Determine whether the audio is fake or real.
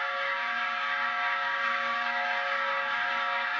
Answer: fake